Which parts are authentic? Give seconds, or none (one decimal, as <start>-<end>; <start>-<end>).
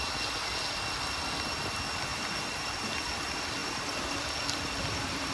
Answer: 0.0-5.3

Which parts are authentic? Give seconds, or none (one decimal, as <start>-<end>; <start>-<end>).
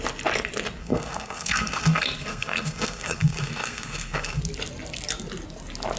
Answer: 0.0-0.8; 4.4-6.0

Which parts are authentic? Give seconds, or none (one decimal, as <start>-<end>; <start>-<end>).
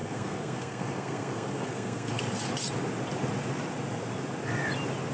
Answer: 2.2-5.1